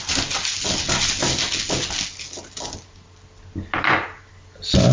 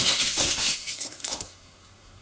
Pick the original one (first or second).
first